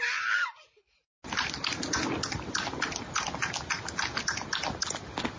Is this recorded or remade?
recorded